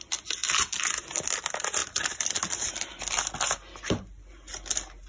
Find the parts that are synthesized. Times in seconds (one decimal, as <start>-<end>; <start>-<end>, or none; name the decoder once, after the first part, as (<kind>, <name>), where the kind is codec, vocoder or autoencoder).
none